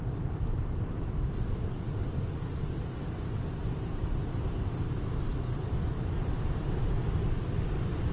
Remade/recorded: recorded